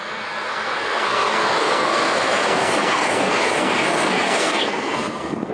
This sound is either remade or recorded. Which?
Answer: remade